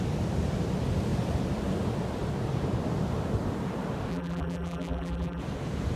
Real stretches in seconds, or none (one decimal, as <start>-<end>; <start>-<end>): 0.0-4.1; 5.4-6.0